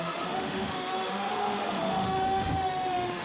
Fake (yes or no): yes